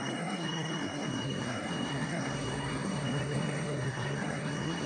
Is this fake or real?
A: fake